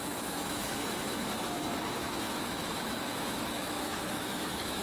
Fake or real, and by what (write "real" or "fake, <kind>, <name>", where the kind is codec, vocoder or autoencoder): fake, autoencoder, DAC-VAE